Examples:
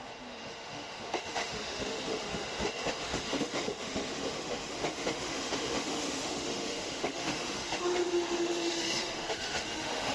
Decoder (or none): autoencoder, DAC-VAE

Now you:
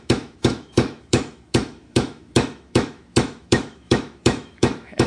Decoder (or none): autoencoder, DAC-VAE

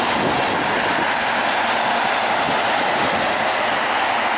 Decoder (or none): none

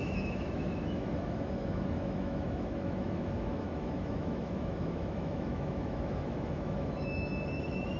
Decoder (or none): autoencoder, DAC-VAE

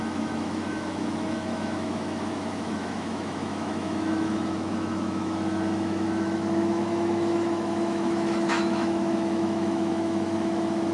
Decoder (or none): autoencoder, DAC-VAE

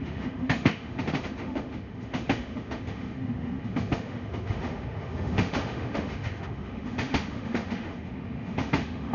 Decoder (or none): autoencoder, DAC-VAE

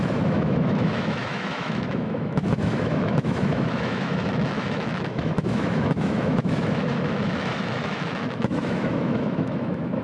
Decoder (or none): autoencoder, DAC-VAE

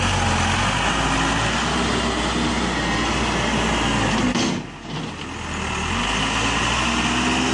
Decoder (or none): none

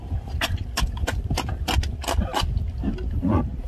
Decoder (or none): none